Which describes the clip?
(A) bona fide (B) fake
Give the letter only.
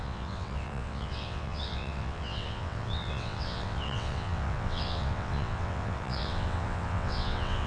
B